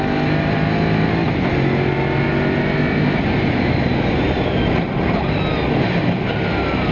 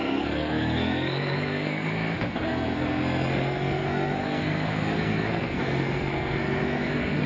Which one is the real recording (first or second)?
first